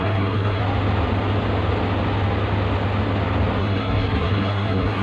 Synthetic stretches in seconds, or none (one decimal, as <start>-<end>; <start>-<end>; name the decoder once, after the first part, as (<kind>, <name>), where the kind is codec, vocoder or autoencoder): 0.0-0.6 (codec, SNAC); 3.6-5.0